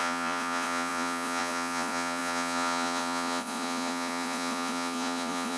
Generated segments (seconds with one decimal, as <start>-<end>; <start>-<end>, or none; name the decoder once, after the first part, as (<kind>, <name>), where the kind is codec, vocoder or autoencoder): 0.0-5.6 (vocoder, Vocos)